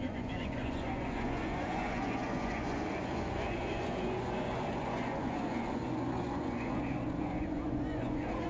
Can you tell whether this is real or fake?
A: fake